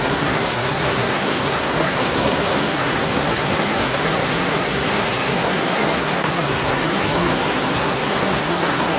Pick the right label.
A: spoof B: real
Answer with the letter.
A